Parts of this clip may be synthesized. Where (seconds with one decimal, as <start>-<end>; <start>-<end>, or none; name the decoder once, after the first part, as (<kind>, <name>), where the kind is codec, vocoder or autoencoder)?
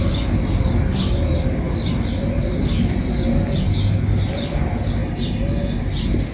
5.0-5.8 (codec, DAC)